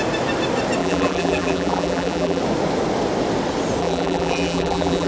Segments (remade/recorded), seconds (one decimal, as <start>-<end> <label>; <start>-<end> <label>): 0.0-0.8 recorded; 0.8-2.4 remade; 2.4-3.8 recorded; 3.8-5.1 remade